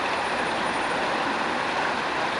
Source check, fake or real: real